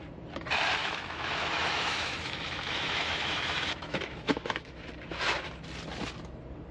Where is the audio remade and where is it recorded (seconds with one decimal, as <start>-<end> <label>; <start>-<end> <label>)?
0.0-0.8 recorded; 0.8-4.8 remade; 4.8-6.7 recorded